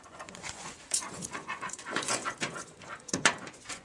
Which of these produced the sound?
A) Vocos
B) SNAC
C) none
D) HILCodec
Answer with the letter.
A